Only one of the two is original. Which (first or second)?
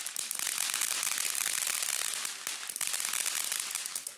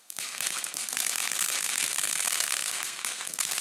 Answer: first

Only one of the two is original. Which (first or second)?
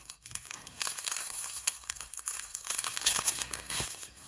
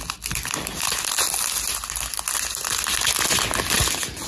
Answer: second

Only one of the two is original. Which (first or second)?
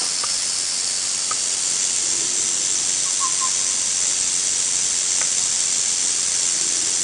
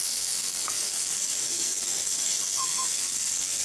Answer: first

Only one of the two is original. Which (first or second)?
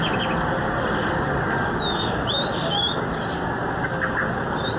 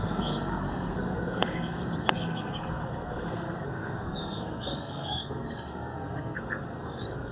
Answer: first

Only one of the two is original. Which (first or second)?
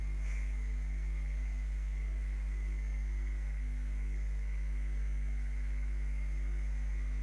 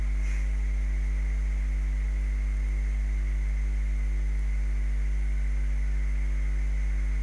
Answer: second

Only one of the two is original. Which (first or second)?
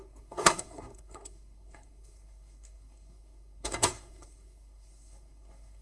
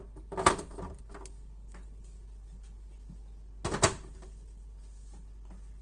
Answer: second